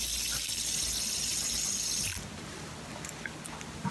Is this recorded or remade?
recorded